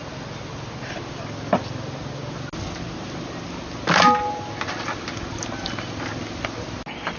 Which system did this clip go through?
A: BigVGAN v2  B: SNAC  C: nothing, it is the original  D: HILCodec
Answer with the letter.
C